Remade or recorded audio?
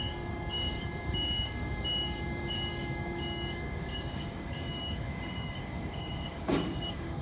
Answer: remade